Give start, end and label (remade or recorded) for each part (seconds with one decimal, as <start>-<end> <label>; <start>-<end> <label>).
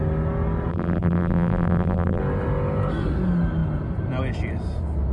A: 0.0-0.7 recorded; 0.7-2.2 remade; 2.2-5.1 recorded